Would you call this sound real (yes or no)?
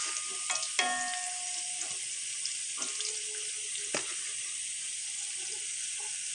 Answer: yes